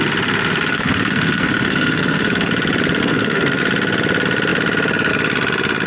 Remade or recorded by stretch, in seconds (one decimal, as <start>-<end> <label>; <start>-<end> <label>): 0.0-0.7 recorded; 0.7-2.5 remade; 2.5-3.0 recorded; 3.0-3.6 remade; 3.6-5.9 recorded